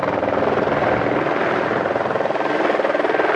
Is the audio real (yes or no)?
yes